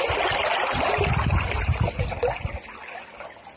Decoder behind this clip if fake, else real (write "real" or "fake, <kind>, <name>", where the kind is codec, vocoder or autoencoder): real